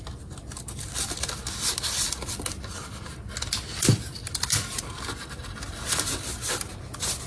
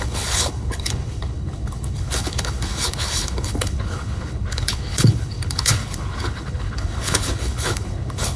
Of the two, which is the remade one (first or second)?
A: second